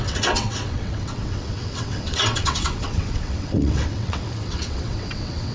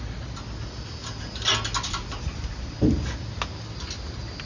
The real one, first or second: second